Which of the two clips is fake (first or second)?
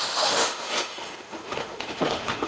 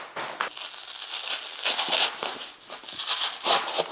first